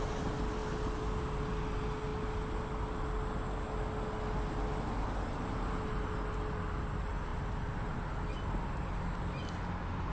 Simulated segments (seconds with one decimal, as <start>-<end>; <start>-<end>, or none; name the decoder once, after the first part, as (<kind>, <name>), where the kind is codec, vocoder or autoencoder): none